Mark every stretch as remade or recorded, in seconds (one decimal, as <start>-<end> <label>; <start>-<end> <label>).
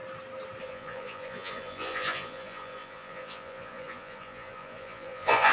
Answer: 0.0-0.6 recorded; 0.6-5.5 remade